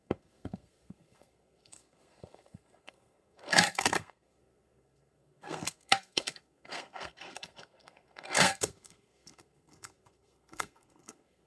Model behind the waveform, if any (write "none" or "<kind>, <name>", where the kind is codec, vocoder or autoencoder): codec, SNAC